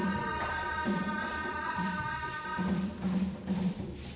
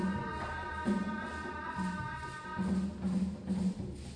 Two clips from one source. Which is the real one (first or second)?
second